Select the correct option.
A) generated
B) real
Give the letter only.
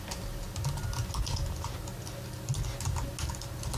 B